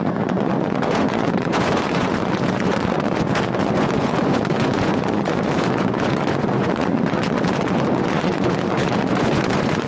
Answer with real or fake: fake